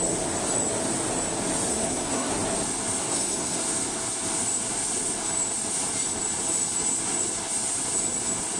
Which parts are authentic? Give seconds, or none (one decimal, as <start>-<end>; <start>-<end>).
0.0-1.7; 2.3-3.0; 3.6-8.6